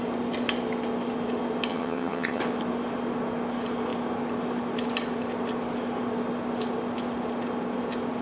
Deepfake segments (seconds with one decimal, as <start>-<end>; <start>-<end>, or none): 1.7-2.4